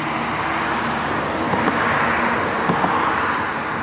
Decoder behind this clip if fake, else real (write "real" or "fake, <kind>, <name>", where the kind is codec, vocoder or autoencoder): real